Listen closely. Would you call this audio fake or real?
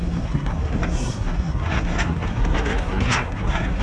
fake